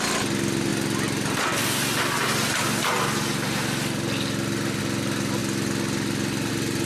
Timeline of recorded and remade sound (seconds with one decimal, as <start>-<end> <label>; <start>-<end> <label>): 0.0-6.9 recorded